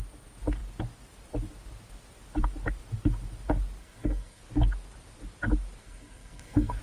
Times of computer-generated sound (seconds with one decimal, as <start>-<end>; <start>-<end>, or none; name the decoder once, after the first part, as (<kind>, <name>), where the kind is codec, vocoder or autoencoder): 3.8-4.4 (codec, SNAC); 5.8-6.8